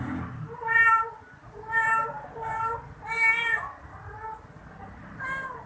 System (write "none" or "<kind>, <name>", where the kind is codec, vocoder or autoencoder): none